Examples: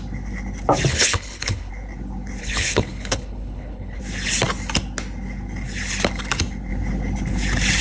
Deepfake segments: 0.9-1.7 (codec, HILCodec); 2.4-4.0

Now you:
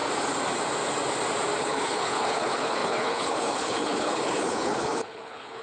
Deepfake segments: 1.6-5.6 (codec, HILCodec)

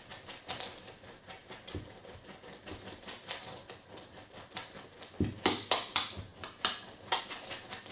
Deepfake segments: none

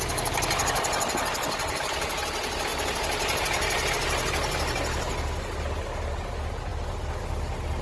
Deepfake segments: none

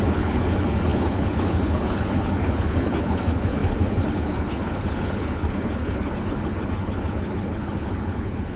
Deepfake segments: 0.0-8.6 (codec, HILCodec)

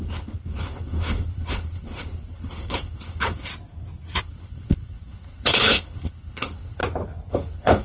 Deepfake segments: 0.0-3.5 (codec, HILCodec); 4.2-6.8; 7.3-7.8

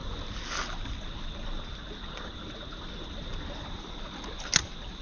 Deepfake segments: none

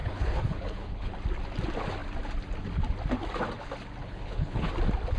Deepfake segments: 0.0-1.1 (codec, HILCodec); 4.0-4.7